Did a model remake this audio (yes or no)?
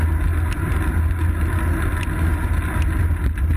no